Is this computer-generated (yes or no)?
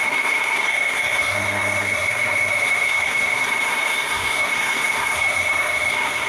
yes